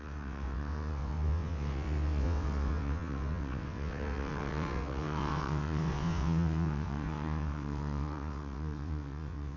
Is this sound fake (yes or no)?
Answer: yes